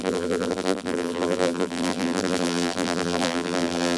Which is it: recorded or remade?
remade